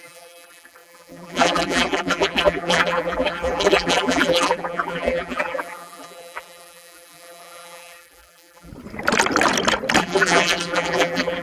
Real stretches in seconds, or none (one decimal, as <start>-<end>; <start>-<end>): 8.7-10.0